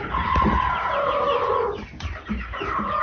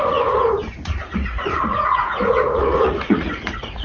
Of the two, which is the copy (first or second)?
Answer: second